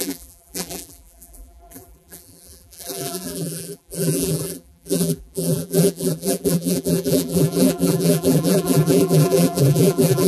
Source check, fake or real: fake